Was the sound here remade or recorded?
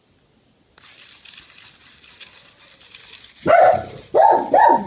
recorded